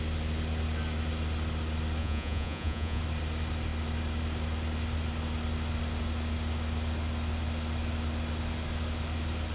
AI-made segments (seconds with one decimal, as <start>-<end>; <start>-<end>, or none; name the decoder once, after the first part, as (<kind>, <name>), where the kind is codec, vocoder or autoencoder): 2.0-3.0 (vocoder, Vocos)